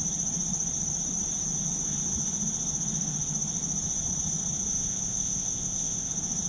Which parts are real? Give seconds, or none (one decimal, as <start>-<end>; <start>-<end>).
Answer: 0.0-4.7; 6.1-6.5